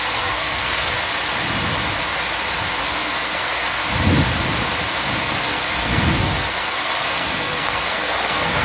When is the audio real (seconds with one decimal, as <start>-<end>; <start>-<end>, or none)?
1.1-2.8; 3.8-5.2